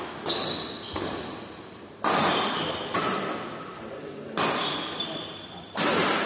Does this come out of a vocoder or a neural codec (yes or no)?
no